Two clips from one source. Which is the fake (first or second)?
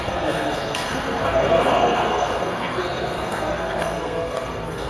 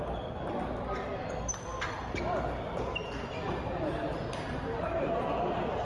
first